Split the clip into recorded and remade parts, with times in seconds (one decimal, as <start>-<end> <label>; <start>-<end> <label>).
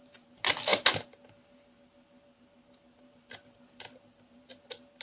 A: 0.0-5.0 recorded